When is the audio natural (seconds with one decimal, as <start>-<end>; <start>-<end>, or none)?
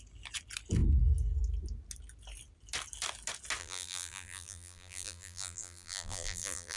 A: 0.0-3.6